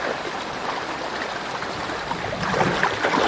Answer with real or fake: real